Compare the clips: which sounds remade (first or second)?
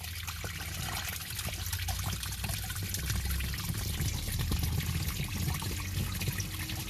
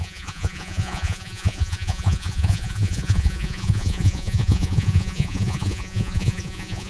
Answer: second